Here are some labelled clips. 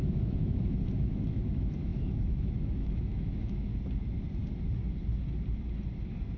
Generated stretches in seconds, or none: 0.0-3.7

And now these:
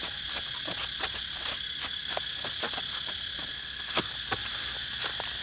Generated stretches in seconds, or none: 1.5-2.4; 3.5-4.1

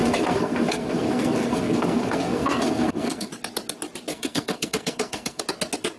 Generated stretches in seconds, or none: 0.0-3.3; 4.1-5.4